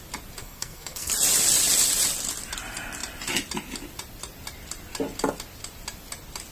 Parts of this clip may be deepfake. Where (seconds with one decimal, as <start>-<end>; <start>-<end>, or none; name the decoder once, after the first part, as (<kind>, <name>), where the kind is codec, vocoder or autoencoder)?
0.4-1.1 (codec, SNAC)